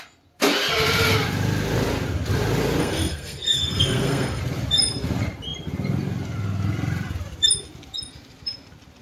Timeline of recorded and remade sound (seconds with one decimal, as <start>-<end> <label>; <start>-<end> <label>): 0.0-2.8 recorded; 2.8-4.4 remade; 4.4-9.0 recorded